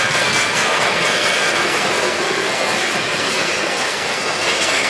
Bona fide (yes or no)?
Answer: no